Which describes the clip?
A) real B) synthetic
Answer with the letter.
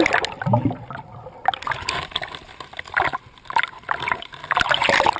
A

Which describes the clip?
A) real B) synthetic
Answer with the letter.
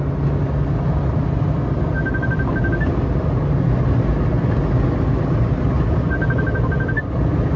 A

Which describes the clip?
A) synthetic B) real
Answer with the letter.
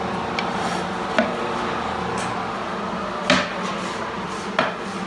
B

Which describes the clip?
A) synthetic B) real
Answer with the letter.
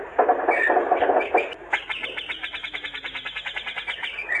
B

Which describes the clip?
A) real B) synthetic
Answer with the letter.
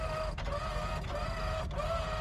A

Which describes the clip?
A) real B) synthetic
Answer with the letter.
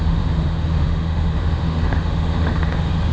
B